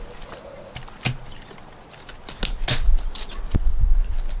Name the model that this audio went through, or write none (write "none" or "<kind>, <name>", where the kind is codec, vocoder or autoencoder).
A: none